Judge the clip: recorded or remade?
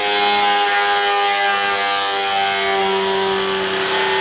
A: recorded